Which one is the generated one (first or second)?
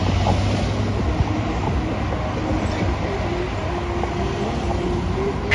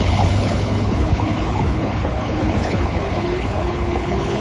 second